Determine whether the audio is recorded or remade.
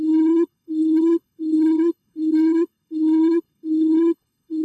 remade